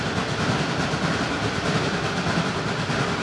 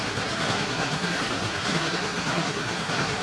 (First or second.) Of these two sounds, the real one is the first